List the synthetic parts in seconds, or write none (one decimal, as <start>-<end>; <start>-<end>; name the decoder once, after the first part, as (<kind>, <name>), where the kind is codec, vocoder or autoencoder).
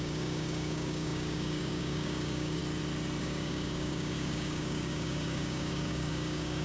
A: 0.0-2.6 (codec, DAC); 3.2-6.6